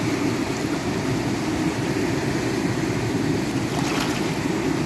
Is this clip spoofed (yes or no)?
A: no